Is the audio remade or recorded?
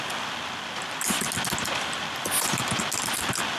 recorded